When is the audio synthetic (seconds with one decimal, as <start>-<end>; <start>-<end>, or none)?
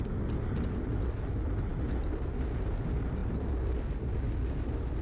none